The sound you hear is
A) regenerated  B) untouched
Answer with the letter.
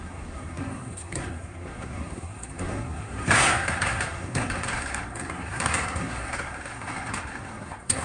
A